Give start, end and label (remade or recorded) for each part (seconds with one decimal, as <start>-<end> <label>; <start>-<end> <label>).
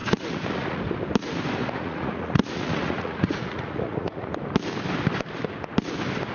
0.0-0.8 remade; 0.8-1.6 recorded; 1.6-4.3 remade; 4.3-6.3 recorded